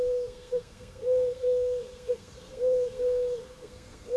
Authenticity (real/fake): fake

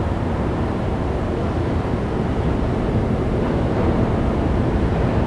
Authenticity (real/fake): fake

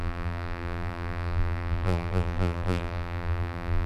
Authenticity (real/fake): fake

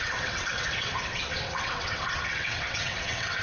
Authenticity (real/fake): fake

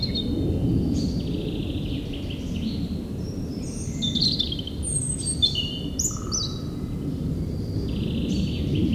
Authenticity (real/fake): real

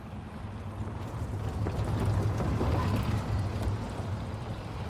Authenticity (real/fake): real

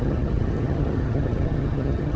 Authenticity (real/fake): fake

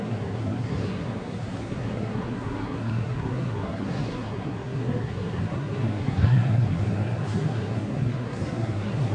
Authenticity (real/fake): fake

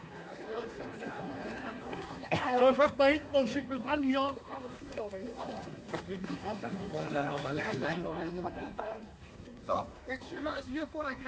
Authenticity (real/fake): fake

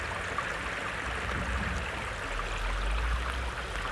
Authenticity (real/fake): real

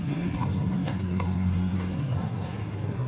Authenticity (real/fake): fake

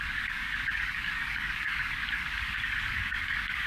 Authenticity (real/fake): fake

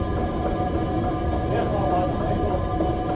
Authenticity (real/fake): real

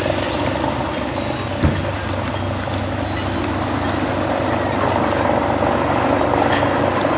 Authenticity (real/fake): real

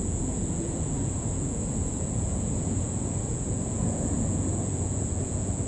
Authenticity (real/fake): fake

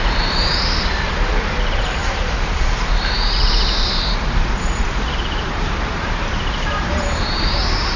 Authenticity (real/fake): fake